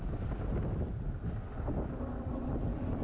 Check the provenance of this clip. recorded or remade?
recorded